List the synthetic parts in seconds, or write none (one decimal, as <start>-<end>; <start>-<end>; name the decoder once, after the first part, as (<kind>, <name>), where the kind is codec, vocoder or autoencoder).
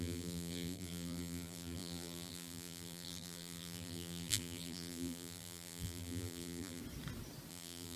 0.0-6.8 (vocoder, BigVGAN v2); 7.5-8.0